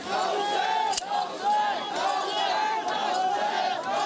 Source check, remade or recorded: recorded